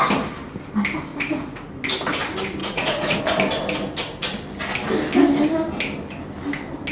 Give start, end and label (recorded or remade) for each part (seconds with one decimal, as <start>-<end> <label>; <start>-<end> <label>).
0.0-1.1 recorded; 1.1-1.7 remade; 1.7-2.6 recorded; 2.6-3.2 remade; 3.2-6.9 recorded